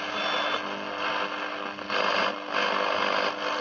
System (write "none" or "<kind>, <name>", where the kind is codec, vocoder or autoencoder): none